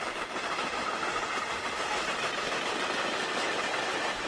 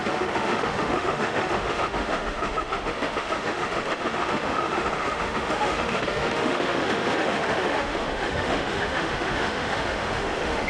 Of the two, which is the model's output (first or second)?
second